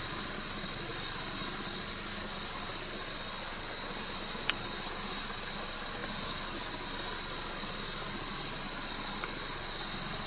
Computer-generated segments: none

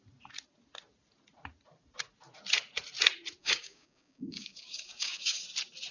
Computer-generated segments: 3.4-5.4

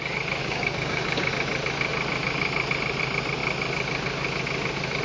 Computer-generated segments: 0.4-1.3

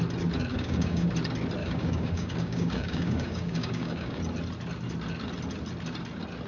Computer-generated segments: 0.5-1.1; 1.6-4.2

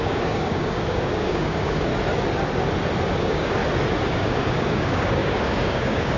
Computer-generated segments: 0.0-1.9; 3.2-3.6; 4.1-6.2